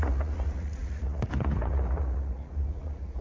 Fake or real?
fake